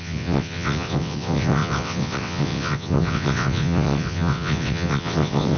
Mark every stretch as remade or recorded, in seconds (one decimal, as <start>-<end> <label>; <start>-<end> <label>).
0.0-5.6 remade